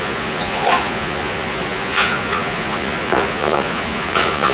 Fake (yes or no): yes